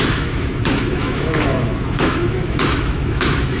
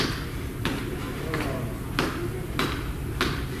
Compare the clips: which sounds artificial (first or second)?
first